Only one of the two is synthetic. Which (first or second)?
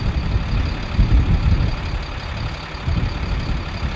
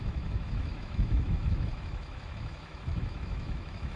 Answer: second